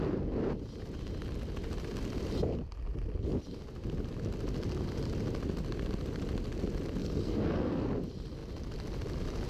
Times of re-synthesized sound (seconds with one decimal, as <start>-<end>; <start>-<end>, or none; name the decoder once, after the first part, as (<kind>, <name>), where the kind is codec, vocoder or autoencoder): 7.0-7.9 (codec, SNAC)